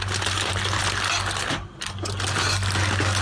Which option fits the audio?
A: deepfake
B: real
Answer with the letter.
B